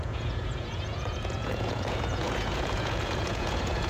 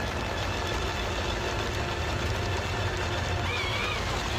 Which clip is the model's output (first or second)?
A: first